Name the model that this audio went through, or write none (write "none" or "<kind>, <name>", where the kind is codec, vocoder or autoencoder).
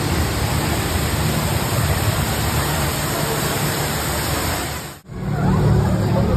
vocoder, BigVGAN v2